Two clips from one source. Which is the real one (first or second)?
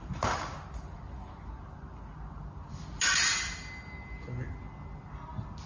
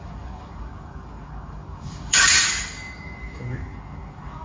first